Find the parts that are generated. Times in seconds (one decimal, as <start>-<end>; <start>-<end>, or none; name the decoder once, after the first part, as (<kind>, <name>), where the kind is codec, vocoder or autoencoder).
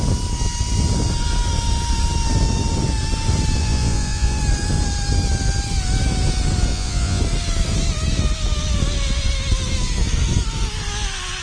3.6-4.4 (vocoder, Vocos); 6.7-7.2